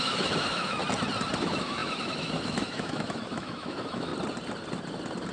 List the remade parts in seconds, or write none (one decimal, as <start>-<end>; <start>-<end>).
0.0-0.8; 1.4-4.1